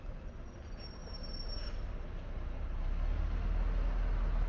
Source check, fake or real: real